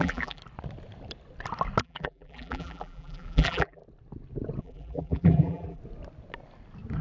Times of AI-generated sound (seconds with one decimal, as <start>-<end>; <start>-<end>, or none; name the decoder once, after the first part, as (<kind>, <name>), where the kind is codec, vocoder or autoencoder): 0.0-0.4 (vocoder, BigVGAN v2); 1.8-3.8; 4.6-5.8